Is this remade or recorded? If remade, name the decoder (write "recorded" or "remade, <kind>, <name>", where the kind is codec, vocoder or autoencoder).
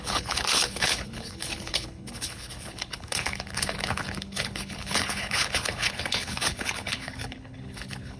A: remade, codec, HILCodec